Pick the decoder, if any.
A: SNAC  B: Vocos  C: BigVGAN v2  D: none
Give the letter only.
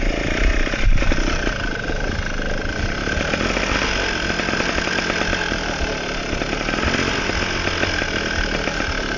D